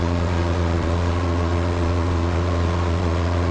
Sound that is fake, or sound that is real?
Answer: fake